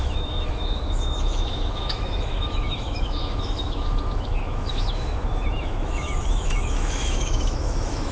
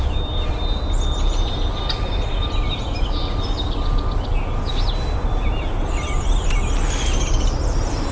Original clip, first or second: second